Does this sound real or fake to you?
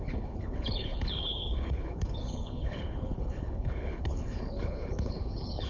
fake